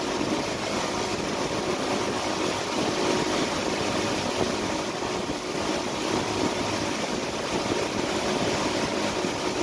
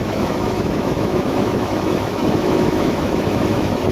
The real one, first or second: first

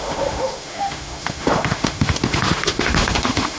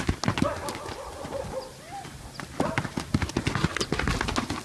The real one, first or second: second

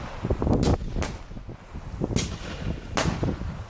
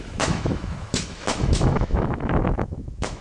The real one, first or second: first